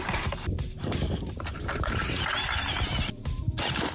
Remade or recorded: remade